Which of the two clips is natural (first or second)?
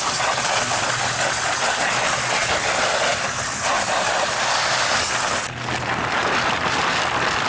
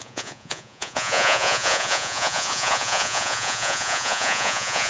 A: first